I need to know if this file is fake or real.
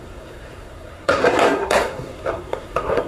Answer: fake